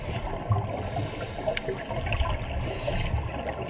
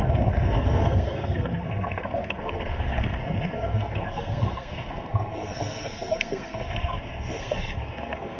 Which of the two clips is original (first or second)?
first